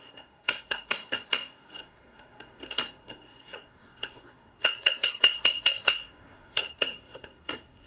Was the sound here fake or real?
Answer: fake